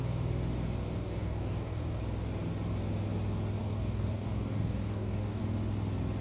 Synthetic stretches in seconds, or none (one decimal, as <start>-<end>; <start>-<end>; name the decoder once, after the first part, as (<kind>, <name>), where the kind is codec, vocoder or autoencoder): 0.8-2.0 (codec, DAC); 3.6-5.4